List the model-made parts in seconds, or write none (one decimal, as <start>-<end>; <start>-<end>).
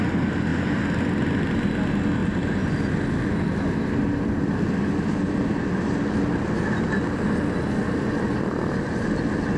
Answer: none